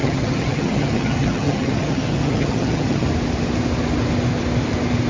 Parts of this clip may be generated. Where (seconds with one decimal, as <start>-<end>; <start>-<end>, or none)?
0.0-3.1